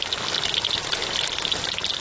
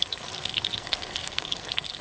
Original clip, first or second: first